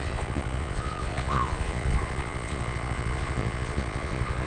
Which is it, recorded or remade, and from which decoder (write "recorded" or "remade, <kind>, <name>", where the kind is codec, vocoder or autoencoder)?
remade, vocoder, Vocos